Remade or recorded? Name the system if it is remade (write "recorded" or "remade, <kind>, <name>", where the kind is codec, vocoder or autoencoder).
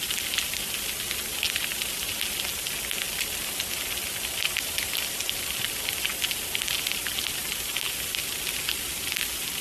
recorded